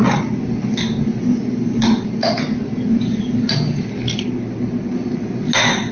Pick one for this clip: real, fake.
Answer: real